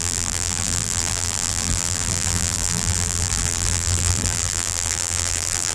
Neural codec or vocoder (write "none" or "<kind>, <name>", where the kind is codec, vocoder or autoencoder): vocoder, BigVGAN v2